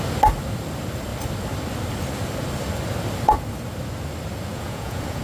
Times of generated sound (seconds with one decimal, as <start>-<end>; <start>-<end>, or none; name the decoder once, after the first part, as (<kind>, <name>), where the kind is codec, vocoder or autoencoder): 4.5-5.2 (vocoder, Vocos)